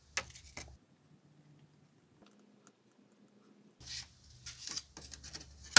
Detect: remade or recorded recorded